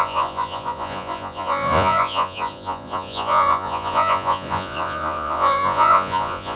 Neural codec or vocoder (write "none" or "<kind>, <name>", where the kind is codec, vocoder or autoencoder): vocoder, Vocos